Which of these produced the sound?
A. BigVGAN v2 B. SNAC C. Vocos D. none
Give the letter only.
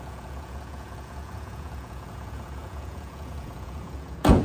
C